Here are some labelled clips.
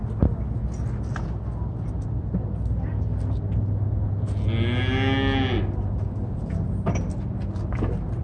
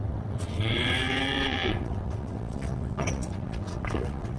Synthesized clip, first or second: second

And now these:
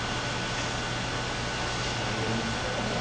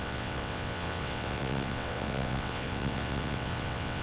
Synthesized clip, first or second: second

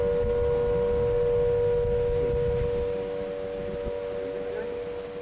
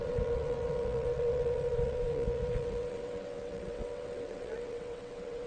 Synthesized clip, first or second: second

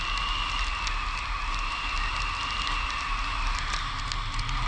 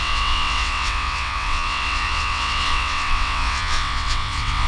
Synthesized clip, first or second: second